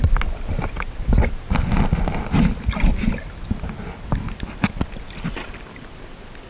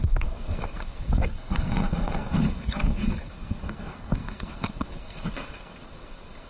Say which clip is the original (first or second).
first